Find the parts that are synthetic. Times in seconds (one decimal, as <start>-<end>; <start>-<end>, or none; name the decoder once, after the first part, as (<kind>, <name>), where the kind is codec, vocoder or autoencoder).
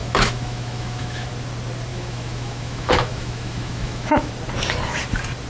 0.0-1.3 (autoencoder, DAC-VAE); 1.9-4.3